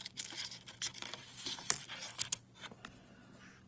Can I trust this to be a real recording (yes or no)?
yes